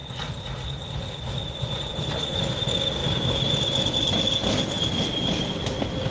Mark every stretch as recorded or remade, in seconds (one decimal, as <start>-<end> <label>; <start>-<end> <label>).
0.0-1.4 recorded; 1.4-2.4 remade; 2.4-6.1 recorded